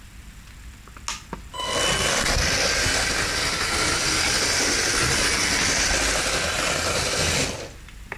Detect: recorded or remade recorded